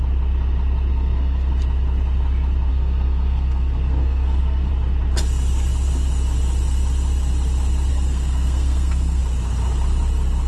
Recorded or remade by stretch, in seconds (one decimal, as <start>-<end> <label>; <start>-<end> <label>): 0.0-0.9 recorded; 0.9-1.5 remade; 1.5-2.7 recorded; 2.7-4.7 remade; 4.7-7.9 recorded; 7.9-9.2 remade; 9.2-10.5 recorded